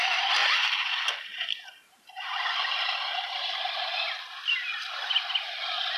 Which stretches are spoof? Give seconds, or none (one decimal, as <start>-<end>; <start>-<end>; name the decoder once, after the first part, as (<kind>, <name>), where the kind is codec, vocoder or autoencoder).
none

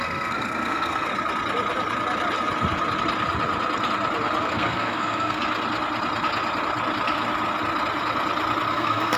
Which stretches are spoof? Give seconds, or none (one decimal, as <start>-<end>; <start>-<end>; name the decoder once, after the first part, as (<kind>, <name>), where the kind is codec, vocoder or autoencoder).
0.0-1.1 (codec, SNAC); 4.4-5.4; 8.7-9.2

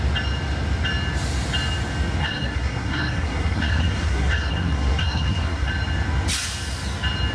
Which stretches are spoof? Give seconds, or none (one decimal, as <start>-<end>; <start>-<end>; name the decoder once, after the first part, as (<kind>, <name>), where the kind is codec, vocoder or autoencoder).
2.2-5.7 (codec, SNAC)

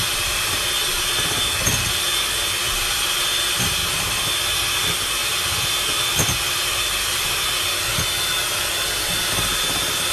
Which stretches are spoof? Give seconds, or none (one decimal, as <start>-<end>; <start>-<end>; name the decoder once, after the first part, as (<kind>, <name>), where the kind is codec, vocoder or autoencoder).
none

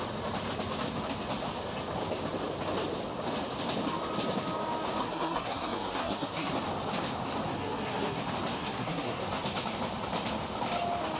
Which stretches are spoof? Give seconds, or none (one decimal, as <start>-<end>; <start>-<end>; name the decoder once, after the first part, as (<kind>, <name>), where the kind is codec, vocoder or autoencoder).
5.0-6.5 (codec, SNAC); 7.6-8.2; 8.6-9.2

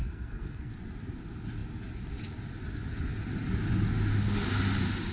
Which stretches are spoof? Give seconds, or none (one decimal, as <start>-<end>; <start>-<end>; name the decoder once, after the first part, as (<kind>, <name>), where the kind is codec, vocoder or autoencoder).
0.0-0.7 (codec, SNAC)

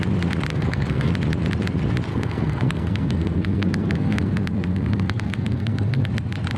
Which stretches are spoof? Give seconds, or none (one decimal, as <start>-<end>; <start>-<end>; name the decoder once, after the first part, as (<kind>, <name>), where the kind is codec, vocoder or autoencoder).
0.5-1.1 (codec, SNAC); 2.1-6.1

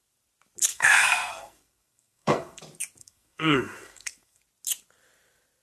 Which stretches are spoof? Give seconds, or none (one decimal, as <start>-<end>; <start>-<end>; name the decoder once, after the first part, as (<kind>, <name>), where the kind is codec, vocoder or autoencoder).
0.7-2.6 (codec, SNAC); 3.0-4.4